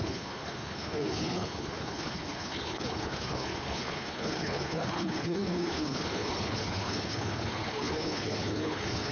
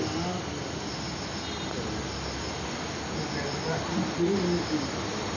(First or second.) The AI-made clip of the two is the first